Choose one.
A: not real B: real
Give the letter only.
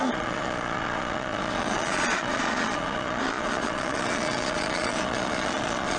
A